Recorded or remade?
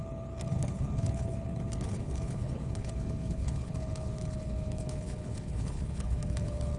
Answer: remade